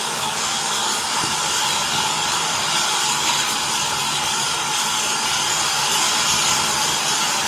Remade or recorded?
remade